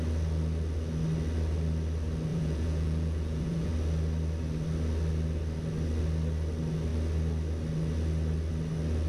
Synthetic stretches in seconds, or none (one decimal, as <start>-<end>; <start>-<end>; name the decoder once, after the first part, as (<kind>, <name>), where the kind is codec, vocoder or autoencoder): 2.3-3.7 (vocoder, Vocos)